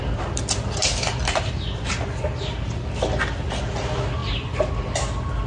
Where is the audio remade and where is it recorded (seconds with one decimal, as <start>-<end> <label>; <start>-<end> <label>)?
0.0-5.5 recorded